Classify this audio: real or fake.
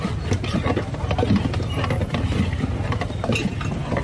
real